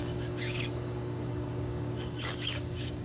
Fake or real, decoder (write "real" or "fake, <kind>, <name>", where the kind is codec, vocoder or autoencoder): fake, codec, DAC